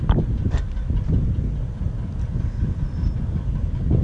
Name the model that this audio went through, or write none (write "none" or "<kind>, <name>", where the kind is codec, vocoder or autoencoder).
none